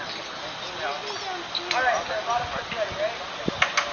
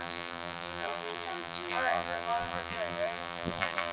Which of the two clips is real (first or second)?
first